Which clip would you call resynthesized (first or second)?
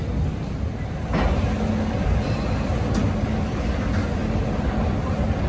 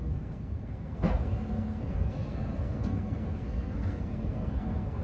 second